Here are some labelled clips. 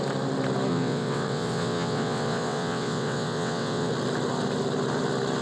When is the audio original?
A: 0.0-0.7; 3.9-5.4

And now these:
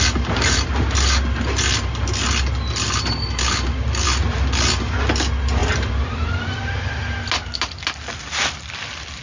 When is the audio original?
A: 0.0-5.6; 7.3-9.2

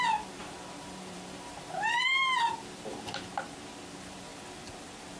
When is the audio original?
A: 4.3-5.2

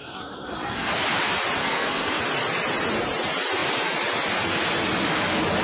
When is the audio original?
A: 0.9-1.6; 2.2-5.6

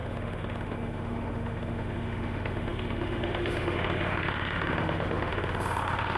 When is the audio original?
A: none